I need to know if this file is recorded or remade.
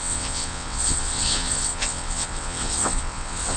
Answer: remade